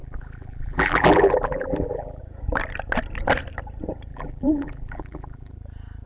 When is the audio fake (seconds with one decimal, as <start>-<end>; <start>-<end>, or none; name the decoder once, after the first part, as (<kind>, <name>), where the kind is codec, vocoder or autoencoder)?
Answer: 0.0-2.2 (vocoder, BigVGAN v2); 4.1-5.5